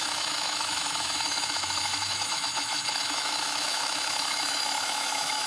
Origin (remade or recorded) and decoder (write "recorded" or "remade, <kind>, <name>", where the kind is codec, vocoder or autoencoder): remade, autoencoder, DAC-VAE